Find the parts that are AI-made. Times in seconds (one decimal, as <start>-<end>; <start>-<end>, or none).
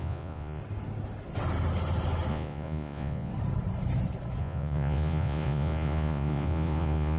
0.0-0.6; 2.3-3.3; 4.4-7.2